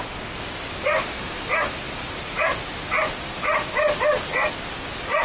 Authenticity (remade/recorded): recorded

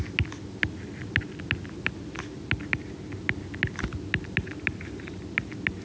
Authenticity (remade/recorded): recorded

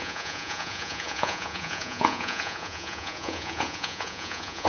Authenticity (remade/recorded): remade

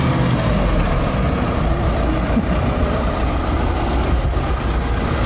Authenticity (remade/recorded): recorded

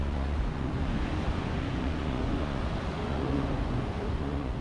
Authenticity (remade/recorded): remade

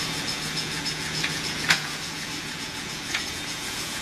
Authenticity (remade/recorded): remade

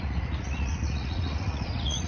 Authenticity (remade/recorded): remade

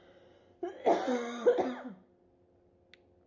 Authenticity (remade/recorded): recorded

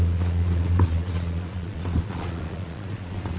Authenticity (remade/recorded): remade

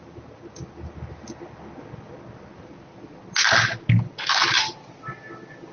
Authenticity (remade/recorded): recorded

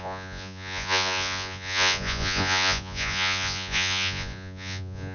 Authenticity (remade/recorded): remade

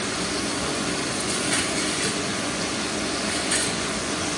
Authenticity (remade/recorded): remade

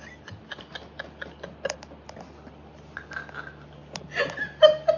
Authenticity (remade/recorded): recorded